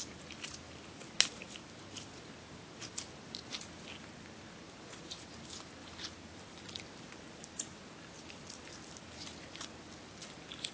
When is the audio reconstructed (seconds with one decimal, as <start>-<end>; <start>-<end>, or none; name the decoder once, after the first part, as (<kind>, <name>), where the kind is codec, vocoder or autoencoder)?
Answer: none